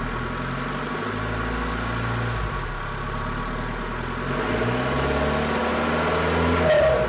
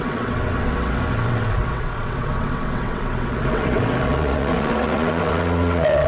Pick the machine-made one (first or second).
second